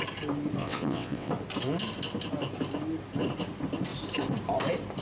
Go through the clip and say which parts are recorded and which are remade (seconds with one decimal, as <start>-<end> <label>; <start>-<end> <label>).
0.0-0.6 recorded; 0.6-1.3 remade; 1.3-5.0 recorded